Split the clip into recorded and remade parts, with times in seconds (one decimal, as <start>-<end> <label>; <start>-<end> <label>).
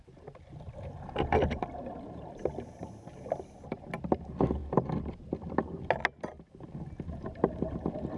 0.0-8.2 recorded